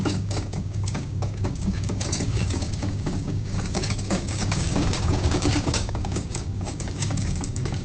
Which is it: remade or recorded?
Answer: remade